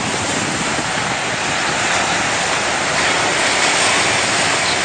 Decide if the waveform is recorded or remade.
recorded